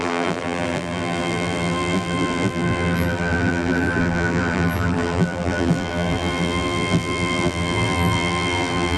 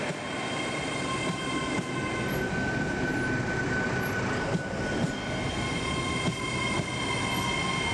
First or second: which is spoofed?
first